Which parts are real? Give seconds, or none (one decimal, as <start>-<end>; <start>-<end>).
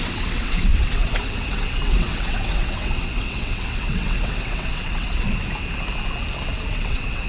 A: 5.4-6.7